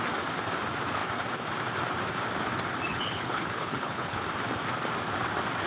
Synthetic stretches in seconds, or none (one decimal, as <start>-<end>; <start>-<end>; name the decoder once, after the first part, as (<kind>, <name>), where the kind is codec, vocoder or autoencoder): 2.9-4.2 (codec, HILCodec)

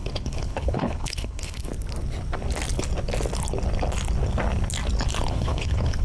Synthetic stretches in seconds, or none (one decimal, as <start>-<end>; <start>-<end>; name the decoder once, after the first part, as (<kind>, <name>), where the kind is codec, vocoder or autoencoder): 0.0-1.7 (codec, HILCodec); 5.3-6.0